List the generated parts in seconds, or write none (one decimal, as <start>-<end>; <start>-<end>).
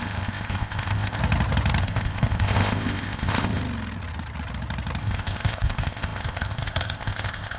0.0-1.2; 1.8-3.6; 5.0-7.6